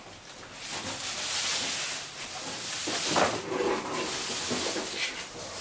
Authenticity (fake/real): real